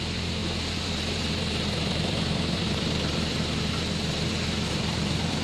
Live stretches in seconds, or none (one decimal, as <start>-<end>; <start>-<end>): none